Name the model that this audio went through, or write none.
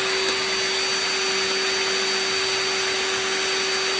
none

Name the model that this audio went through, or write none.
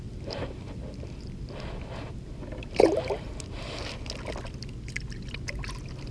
none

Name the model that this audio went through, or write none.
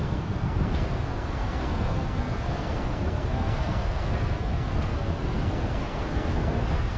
codec, SNAC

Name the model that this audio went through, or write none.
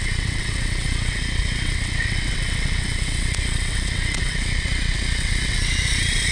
vocoder, WaveNeXt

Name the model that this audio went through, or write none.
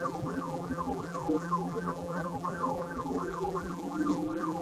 vocoder, BigVGAN v2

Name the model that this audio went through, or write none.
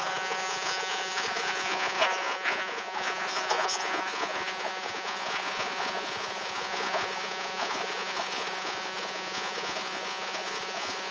vocoder, Vocos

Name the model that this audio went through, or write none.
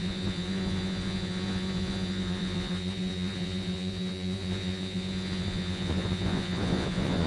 vocoder, Vocos